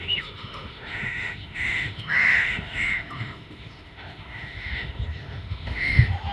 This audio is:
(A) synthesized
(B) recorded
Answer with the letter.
A